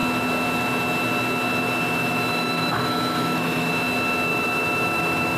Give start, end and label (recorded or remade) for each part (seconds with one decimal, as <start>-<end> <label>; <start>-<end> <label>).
0.0-2.0 recorded; 2.0-3.7 remade; 3.7-4.3 recorded; 4.3-5.4 remade